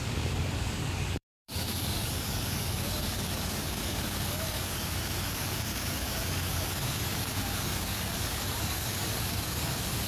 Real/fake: fake